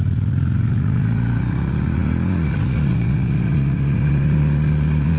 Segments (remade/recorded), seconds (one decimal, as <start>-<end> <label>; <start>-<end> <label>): 0.0-5.2 remade